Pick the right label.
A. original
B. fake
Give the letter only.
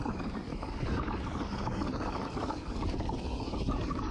B